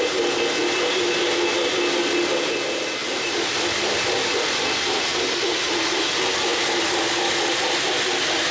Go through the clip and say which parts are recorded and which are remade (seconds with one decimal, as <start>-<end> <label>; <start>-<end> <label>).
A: 0.0-3.0 recorded; 3.0-3.5 remade; 3.5-8.5 recorded